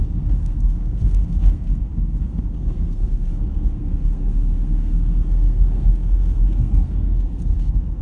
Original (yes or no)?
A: no